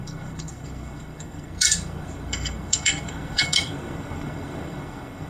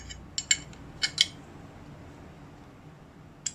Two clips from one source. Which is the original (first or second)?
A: second